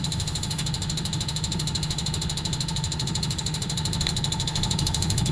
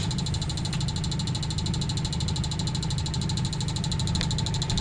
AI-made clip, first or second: first